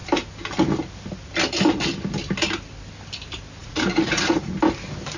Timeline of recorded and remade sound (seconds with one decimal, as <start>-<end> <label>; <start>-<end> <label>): 0.0-3.6 recorded; 3.6-4.5 remade; 4.5-5.2 recorded

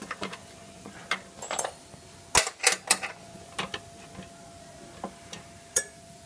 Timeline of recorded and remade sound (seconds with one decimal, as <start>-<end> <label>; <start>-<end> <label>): 0.0-1.0 remade; 1.0-3.1 recorded; 3.1-3.5 remade; 3.5-5.7 recorded; 5.7-6.3 remade

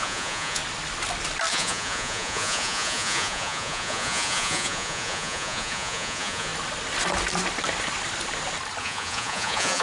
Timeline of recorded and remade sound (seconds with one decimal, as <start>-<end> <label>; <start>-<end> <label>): 0.0-0.6 remade; 0.6-1.5 recorded; 1.5-6.5 remade; 6.5-8.8 recorded; 8.8-9.8 remade

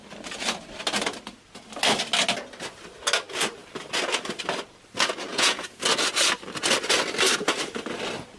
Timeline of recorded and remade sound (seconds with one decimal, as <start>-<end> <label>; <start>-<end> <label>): 0.0-5.3 recorded; 5.3-5.8 remade; 5.8-8.4 recorded

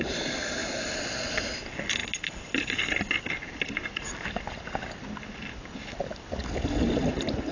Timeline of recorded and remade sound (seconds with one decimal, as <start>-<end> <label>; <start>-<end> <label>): 0.0-7.5 recorded

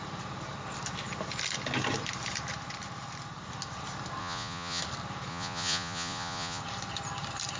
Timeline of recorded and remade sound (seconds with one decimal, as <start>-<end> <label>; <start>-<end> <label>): 0.0-4.2 recorded; 4.2-4.8 remade; 4.8-5.3 recorded; 5.3-6.6 remade; 6.6-7.6 recorded

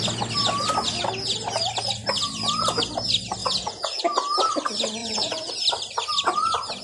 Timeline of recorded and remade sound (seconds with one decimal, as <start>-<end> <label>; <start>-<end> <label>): 0.0-3.4 recorded; 3.4-4.0 remade; 4.0-5.0 recorded; 5.0-5.5 remade; 5.5-6.8 recorded